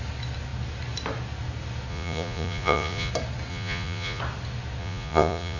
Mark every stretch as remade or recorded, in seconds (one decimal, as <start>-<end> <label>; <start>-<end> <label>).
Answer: 0.0-1.9 recorded; 1.9-3.1 remade; 3.1-3.5 recorded; 3.5-4.2 remade; 4.2-4.8 recorded; 4.8-5.6 remade